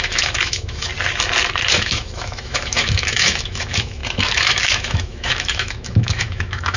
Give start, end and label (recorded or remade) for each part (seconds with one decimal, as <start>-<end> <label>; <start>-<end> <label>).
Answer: 0.0-0.9 remade; 0.9-1.7 recorded; 1.7-6.8 remade